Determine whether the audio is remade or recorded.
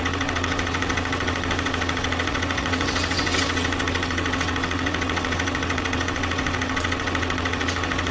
remade